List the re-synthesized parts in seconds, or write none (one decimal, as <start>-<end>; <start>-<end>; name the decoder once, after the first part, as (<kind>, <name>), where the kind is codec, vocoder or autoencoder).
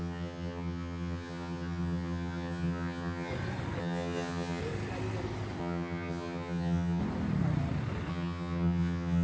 0.0-3.3 (vocoder, HiFi-GAN); 3.8-4.6; 5.6-7.0; 8.1-9.2